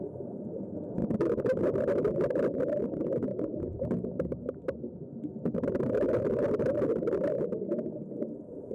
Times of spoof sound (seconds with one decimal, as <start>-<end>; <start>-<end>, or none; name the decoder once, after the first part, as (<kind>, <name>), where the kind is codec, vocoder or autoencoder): 1.0-1.6 (autoencoder, DAC-VAE); 3.3-6.8